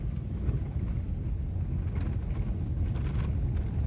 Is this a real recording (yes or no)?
yes